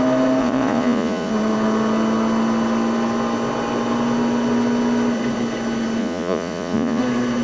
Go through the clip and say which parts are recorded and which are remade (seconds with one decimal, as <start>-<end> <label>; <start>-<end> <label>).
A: 0.0-0.4 recorded; 0.4-1.3 remade; 1.3-6.0 recorded; 6.0-7.0 remade; 7.0-7.4 recorded